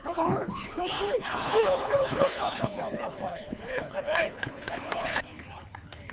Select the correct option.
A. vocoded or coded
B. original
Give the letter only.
A